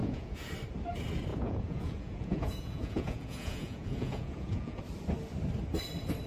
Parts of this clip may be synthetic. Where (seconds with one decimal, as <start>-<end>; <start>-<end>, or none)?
0.0-0.5; 1.3-4.8

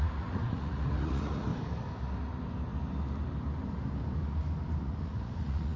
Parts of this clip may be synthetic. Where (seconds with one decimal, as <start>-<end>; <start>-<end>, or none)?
0.0-1.5; 4.8-5.8

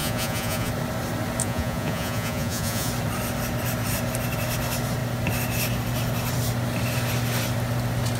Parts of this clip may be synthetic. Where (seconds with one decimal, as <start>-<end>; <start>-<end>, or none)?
0.0-0.7; 1.4-2.9

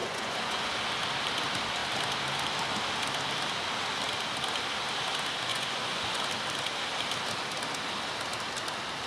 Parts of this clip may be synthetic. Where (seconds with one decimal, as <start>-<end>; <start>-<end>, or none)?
0.0-0.7; 5.5-6.2

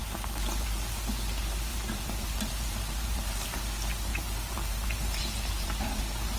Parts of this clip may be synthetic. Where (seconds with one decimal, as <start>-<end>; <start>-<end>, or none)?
0.0-0.8; 1.7-3.6; 4.1-6.0

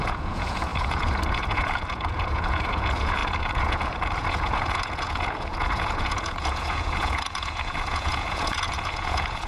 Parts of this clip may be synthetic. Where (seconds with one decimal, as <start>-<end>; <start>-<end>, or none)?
0.0-9.5

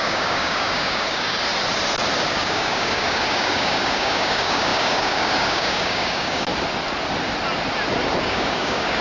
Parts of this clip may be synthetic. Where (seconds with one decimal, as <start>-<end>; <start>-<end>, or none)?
0.0-1.5; 2.3-6.5; 8.2-9.0